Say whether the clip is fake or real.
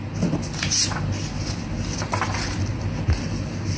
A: real